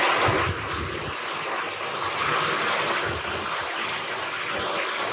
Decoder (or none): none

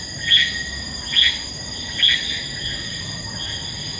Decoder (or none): none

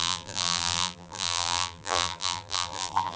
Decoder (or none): vocoder, BigVGAN v2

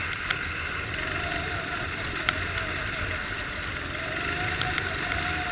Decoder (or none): none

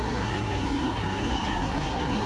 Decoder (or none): codec, SNAC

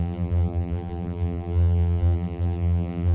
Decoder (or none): vocoder, BigVGAN v2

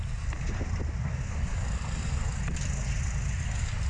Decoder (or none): none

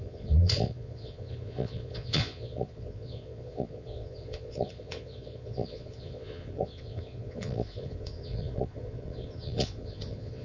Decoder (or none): vocoder, Vocos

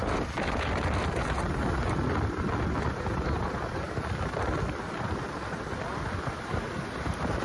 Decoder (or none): vocoder, BigVGAN v2